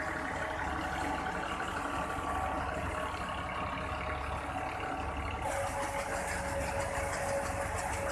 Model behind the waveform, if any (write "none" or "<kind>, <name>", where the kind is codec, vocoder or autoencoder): none